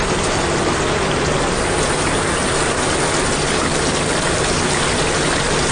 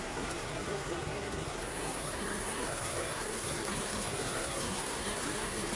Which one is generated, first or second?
second